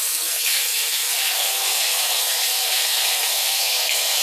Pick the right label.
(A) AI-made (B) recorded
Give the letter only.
A